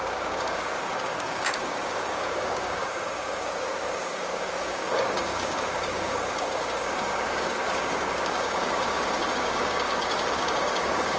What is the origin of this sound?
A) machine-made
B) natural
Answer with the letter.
A